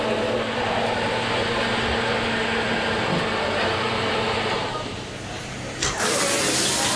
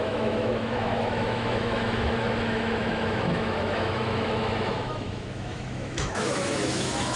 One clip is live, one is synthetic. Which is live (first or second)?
first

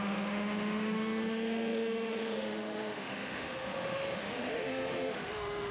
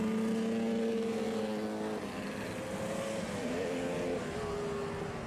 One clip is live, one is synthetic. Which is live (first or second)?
second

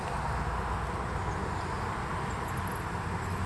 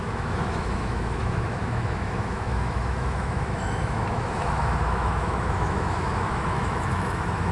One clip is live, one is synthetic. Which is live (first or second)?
first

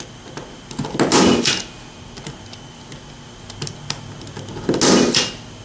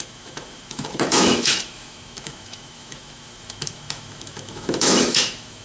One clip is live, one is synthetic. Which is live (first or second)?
first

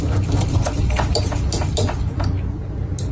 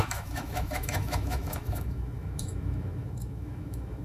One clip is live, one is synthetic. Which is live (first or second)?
first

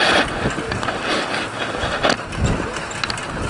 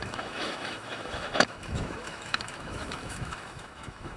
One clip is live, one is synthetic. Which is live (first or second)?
first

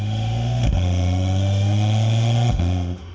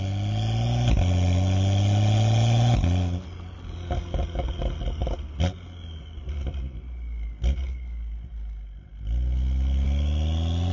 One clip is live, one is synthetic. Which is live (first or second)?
second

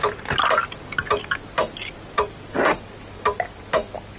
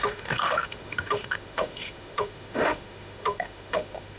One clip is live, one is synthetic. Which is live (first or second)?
first